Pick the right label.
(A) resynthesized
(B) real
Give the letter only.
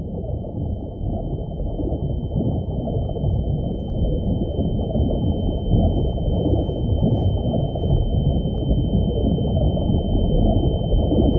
B